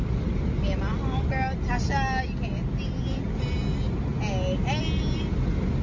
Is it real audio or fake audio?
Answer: real